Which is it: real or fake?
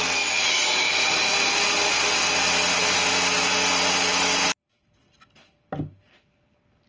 real